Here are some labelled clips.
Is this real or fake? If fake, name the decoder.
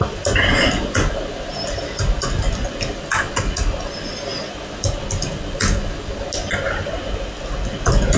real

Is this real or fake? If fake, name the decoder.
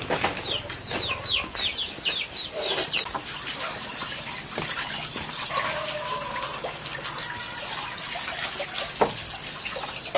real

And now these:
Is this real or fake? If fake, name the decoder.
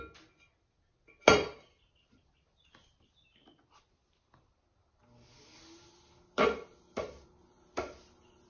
real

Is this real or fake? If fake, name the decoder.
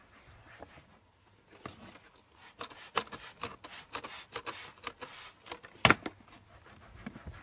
real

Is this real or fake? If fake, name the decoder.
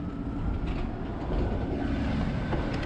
real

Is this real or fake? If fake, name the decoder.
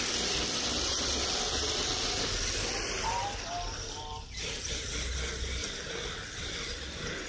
real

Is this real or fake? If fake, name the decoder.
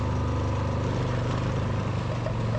real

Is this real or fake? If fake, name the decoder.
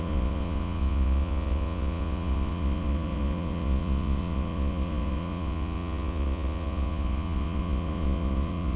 fake, vocoder, Vocos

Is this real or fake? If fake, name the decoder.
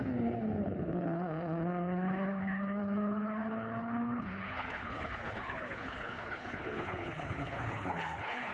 fake, codec, HILCodec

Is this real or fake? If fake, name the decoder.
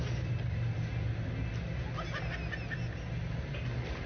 real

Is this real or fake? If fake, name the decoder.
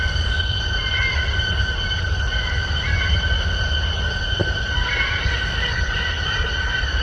real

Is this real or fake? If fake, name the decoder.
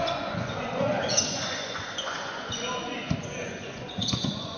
fake, vocoder, Vocos